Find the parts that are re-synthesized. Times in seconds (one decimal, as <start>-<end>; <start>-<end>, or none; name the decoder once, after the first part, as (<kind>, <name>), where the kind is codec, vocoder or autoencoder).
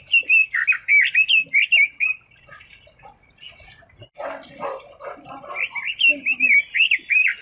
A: none